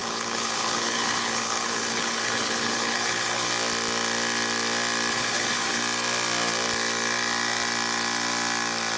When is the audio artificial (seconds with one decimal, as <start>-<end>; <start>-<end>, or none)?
0.0-3.5; 5.1-5.8